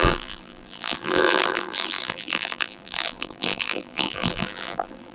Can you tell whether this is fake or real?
fake